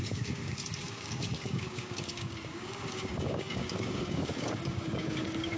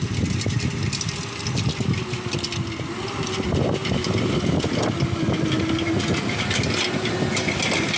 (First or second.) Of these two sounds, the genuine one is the second